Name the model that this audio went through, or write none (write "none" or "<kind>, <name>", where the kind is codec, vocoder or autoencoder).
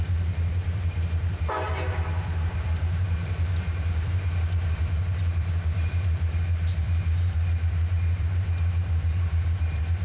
vocoder, BigVGAN v2